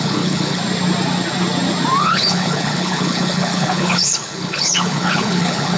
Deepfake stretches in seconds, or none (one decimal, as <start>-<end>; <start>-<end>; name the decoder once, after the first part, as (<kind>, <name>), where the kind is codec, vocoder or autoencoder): 0.0-0.6 (codec, HILCodec); 2.0-5.8